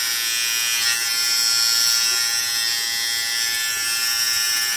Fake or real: real